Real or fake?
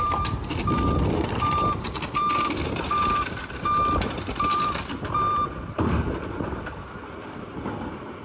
fake